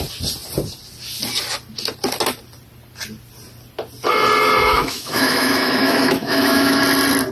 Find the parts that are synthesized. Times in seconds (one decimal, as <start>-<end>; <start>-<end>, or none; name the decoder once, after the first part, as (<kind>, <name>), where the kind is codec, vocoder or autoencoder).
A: 4.7-6.8 (autoencoder, DAC-VAE)